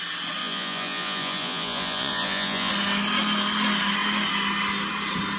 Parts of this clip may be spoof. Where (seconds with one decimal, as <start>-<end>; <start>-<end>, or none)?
0.4-2.7